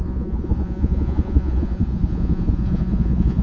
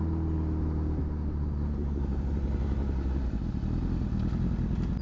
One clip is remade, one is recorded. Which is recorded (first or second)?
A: second